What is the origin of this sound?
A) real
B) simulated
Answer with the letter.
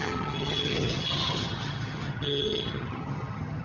B